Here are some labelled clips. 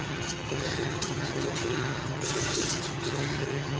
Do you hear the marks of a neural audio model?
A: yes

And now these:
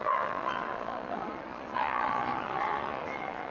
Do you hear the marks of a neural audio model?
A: yes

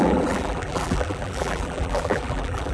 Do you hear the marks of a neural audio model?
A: yes